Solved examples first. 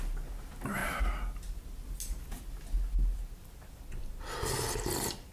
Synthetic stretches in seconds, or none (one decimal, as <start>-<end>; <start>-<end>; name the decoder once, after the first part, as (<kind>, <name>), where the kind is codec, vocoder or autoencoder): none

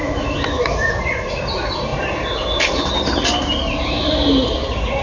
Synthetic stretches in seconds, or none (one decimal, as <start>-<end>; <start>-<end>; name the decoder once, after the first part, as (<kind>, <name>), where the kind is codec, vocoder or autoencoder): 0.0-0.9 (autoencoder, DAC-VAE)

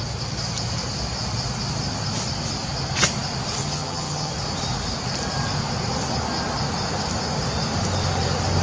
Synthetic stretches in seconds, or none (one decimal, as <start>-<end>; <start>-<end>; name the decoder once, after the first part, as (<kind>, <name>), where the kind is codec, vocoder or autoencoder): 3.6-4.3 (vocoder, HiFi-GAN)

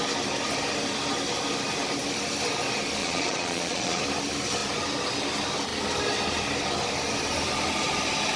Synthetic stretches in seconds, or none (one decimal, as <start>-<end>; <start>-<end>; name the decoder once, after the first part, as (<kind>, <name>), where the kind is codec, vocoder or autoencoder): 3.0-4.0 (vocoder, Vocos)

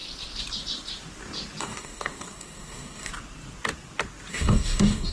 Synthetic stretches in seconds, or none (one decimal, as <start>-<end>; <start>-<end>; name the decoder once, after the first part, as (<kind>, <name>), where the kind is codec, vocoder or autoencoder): 1.6-3.1 (codec, DAC); 4.3-5.1

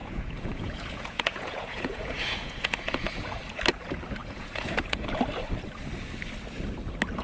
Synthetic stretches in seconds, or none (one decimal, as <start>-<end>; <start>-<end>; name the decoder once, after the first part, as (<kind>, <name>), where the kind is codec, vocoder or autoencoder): 0.0-3.4 (vocoder, Vocos); 4.2-5.0